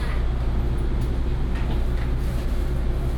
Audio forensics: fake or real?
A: real